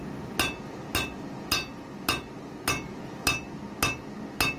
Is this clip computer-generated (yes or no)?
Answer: no